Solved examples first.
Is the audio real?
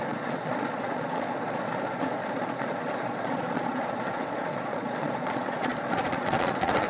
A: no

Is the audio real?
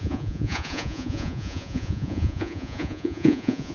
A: no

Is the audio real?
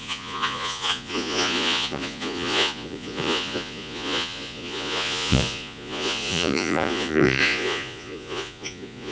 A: no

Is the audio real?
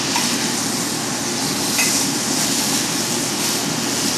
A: yes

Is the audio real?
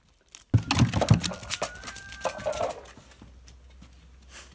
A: yes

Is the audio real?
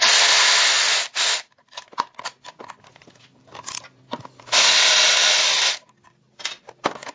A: yes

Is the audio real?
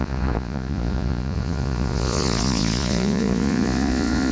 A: no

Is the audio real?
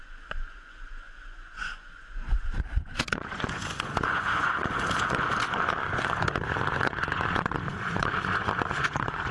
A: no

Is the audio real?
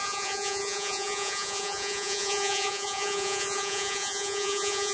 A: no